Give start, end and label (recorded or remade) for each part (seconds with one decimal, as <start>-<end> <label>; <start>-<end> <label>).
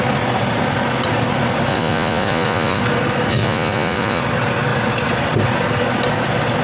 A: 0.0-1.7 recorded; 1.7-2.8 remade; 2.8-3.3 recorded; 3.3-4.2 remade; 4.2-6.6 recorded